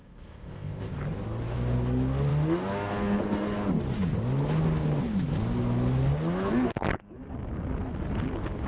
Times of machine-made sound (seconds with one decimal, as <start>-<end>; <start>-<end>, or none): 0.0-0.9